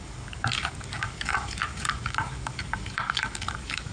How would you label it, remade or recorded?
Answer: remade